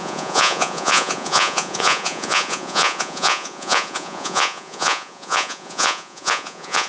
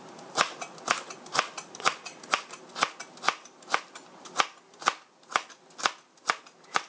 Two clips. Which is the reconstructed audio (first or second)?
first